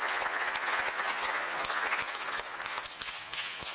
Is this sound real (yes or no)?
no